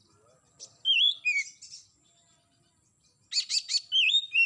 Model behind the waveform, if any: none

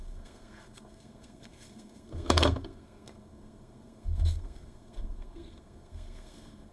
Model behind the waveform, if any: codec, SNAC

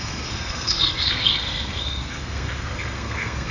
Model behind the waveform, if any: codec, SNAC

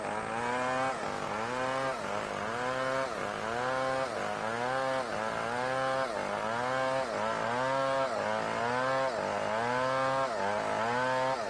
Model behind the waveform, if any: none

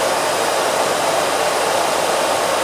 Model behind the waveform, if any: none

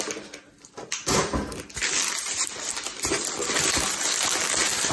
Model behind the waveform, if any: none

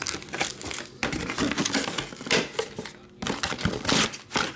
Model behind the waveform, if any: none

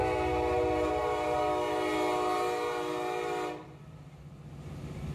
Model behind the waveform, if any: none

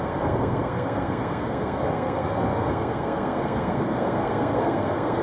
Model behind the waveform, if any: codec, SNAC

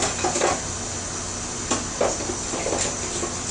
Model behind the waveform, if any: none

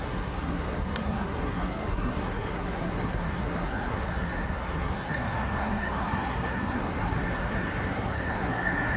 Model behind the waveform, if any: codec, SNAC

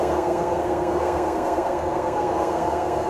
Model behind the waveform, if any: codec, SNAC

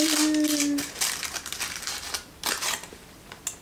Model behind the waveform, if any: none